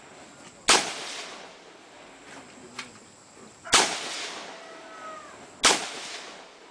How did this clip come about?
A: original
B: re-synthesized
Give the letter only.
A